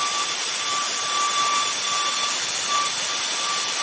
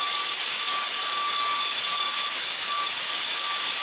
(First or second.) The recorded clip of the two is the first